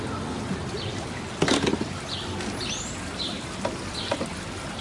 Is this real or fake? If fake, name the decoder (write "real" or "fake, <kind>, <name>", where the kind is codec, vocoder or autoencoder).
real